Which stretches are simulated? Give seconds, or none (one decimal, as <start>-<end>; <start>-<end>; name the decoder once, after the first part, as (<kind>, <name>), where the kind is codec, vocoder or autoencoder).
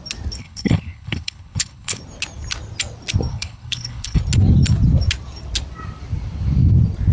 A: 0.4-2.0 (codec, HILCodec); 3.3-4.2